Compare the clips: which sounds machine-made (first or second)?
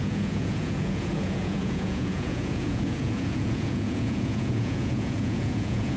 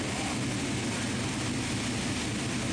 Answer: first